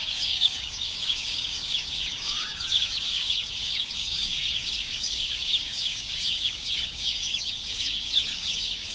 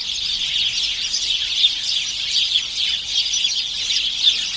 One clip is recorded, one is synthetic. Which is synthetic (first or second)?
first